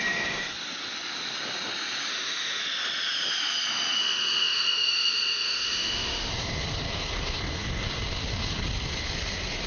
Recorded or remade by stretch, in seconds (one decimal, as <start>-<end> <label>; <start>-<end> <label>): 0.0-2.1 recorded; 2.1-2.6 remade; 2.6-4.0 recorded; 4.0-6.3 remade; 6.3-9.7 recorded